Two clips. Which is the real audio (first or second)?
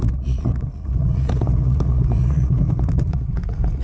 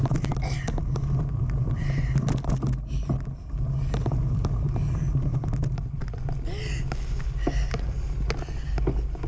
second